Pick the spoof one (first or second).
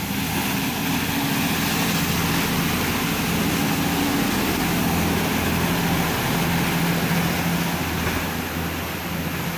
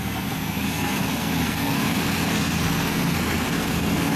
second